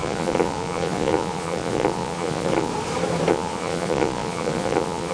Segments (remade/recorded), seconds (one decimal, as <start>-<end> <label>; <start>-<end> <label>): 0.0-2.7 remade; 2.7-3.3 recorded; 3.3-5.1 remade